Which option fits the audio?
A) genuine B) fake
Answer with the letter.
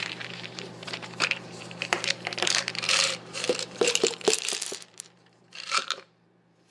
B